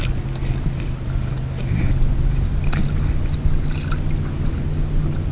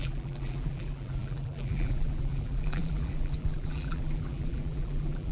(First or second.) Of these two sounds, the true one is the first